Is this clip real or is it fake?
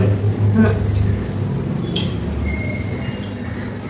real